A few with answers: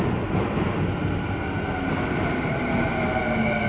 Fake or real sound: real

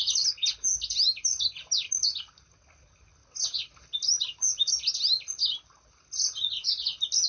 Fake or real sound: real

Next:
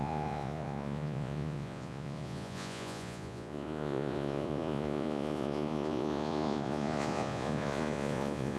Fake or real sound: fake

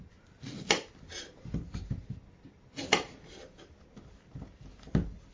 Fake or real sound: real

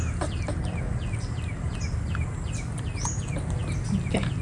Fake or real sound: real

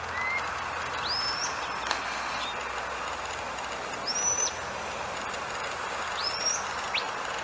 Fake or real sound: real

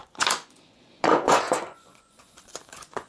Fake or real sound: fake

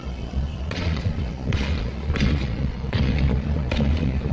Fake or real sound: fake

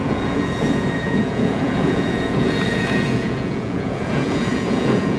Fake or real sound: fake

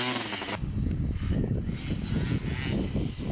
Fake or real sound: real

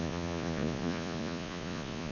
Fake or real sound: fake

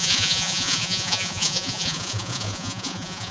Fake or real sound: fake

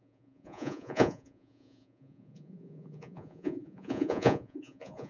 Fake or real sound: fake